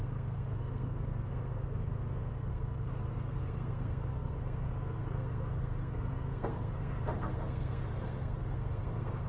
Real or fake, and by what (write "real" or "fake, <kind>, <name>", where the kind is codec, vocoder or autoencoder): fake, codec, SNAC